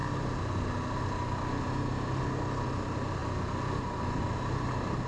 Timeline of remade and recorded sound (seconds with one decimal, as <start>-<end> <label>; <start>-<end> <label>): 0.0-5.1 recorded